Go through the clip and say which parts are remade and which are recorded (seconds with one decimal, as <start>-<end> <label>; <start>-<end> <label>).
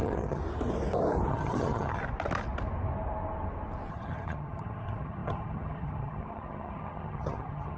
0.0-0.4 remade; 0.4-1.3 recorded; 1.3-2.0 remade; 2.0-3.9 recorded; 3.9-7.8 remade